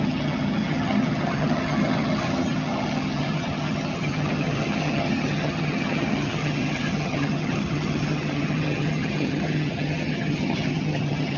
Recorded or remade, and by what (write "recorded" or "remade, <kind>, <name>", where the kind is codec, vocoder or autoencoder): remade, vocoder, HiFi-GAN